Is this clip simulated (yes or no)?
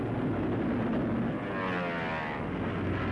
no